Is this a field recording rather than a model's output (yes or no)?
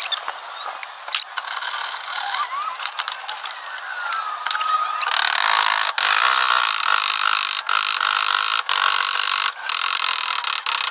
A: yes